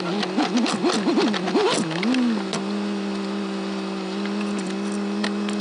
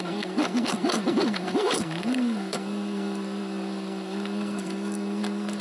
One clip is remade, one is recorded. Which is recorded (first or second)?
first